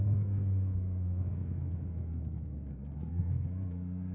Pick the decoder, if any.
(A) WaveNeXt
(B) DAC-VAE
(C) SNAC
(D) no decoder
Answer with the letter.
C